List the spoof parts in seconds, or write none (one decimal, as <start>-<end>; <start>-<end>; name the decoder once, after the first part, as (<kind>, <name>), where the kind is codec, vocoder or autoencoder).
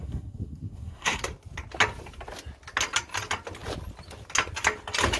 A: 0.0-1.2 (codec, SNAC)